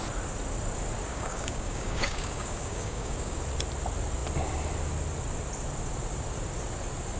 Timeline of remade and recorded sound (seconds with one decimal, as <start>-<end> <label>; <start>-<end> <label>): 0.0-1.1 recorded; 1.1-3.4 remade; 3.4-7.2 recorded